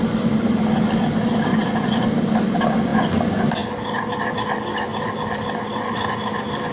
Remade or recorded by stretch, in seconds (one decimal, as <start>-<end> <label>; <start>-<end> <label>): 0.0-1.5 recorded; 1.5-2.0 remade; 2.0-6.7 recorded